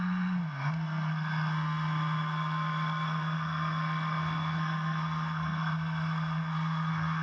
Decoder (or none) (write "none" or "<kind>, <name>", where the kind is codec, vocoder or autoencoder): codec, SNAC